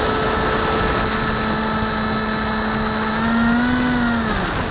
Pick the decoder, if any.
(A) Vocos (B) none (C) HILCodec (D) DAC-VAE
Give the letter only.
B